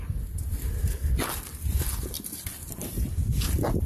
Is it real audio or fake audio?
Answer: fake